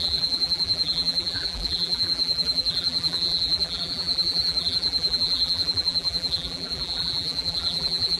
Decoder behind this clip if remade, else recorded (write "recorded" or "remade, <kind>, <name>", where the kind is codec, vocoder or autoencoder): remade, vocoder, BigVGAN v2